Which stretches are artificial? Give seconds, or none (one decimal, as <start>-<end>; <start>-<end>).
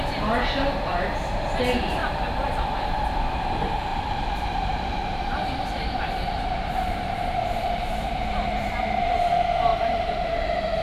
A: 2.0-3.4; 3.9-8.7; 9.7-10.4